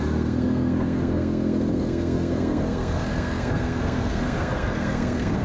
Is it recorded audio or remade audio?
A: remade